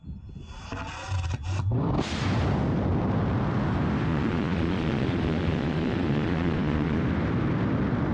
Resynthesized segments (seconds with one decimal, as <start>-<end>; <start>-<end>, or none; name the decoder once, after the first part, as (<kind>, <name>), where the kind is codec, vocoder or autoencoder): 4.1-7.0 (vocoder, Vocos)